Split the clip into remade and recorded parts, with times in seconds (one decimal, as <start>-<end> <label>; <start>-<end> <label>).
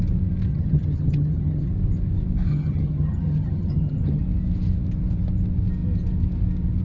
0.0-0.5 recorded; 0.5-1.7 remade; 1.7-2.5 recorded; 2.5-4.2 remade; 4.2-6.8 recorded